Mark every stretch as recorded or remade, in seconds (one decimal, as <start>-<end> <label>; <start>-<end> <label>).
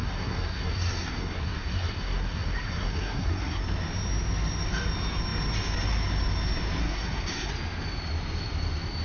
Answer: 0.0-3.6 remade; 3.6-6.8 recorded; 6.8-7.5 remade; 7.5-9.0 recorded